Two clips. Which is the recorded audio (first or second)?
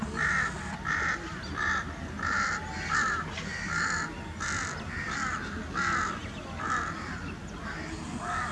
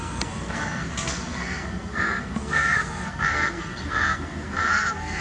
first